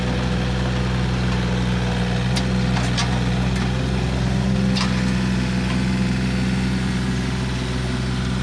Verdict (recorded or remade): recorded